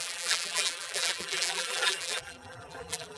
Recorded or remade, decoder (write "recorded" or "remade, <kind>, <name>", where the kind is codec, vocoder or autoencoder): remade, vocoder, BigVGAN v2